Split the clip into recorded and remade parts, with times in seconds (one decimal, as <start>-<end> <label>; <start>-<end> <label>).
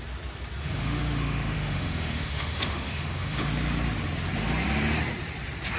0.0-0.6 recorded; 0.6-3.5 remade; 3.5-5.8 recorded